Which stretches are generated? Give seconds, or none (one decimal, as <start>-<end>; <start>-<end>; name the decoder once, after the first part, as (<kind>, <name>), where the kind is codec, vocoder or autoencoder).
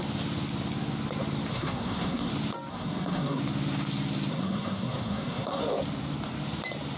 1.5-2.3 (codec, SNAC); 2.7-3.4; 4.3-5.6